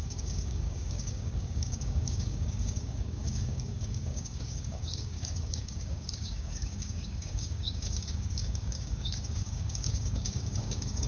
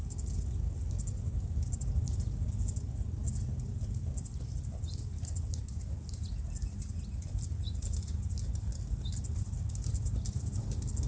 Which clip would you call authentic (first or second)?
second